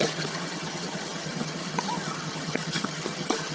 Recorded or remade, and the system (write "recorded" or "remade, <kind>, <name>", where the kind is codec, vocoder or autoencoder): remade, vocoder, HiFi-GAN